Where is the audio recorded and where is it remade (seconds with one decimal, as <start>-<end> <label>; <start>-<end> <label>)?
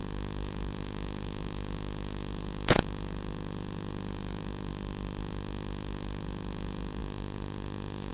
0.0-4.7 remade; 4.7-5.2 recorded; 5.2-8.1 remade